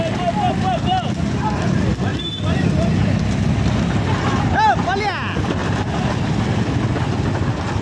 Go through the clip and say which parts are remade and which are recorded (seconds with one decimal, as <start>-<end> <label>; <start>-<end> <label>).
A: 0.0-7.8 recorded